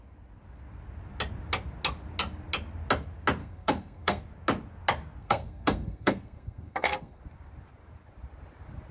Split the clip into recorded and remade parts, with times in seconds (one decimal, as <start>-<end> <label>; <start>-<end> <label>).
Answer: 0.0-3.4 recorded; 3.4-4.2 remade; 4.2-5.2 recorded; 5.2-7.2 remade; 7.2-8.9 recorded